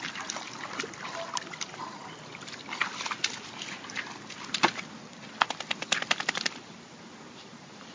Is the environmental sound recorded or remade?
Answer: recorded